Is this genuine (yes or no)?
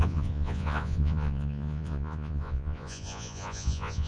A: no